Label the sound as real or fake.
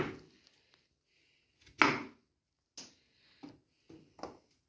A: real